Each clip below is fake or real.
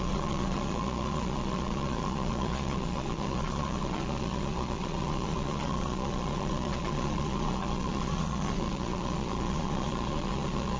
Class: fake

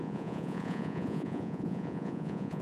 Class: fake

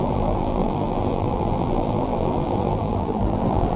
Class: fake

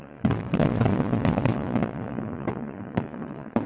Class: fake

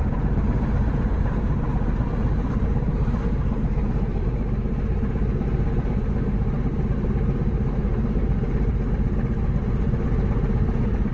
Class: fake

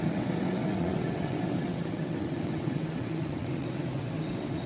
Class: fake